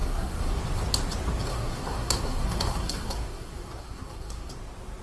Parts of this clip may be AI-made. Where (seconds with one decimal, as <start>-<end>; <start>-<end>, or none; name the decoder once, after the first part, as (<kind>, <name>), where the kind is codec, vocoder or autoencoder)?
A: 0.0-0.6 (codec, SNAC); 1.5-4.5